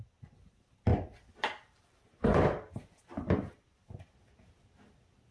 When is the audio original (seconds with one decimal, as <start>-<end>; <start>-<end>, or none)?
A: 0.0-5.3